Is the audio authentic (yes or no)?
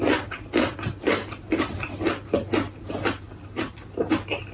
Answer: yes